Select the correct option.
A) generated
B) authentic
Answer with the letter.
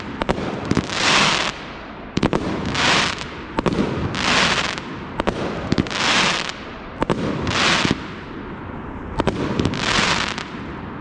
B